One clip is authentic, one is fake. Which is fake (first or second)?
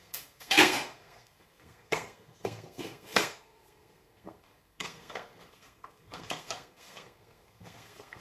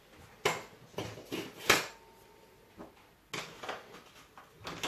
first